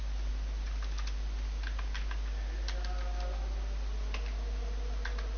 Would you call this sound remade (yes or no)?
no